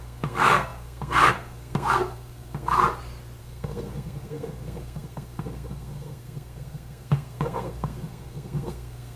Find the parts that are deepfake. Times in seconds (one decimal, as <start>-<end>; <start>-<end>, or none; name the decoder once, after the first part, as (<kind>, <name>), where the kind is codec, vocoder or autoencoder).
0.0-2.8 (codec, SNAC); 3.4-9.2